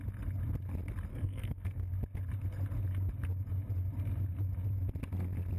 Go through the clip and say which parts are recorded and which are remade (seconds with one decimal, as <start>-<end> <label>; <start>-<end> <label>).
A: 0.0-1.1 recorded; 1.1-1.9 remade; 1.9-5.6 recorded